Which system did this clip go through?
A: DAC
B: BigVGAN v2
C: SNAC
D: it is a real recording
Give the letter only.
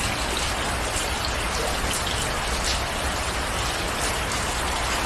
D